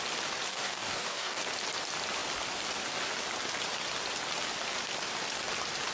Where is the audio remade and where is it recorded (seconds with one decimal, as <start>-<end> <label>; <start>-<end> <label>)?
0.0-0.5 recorded; 0.5-1.4 remade; 1.4-5.9 recorded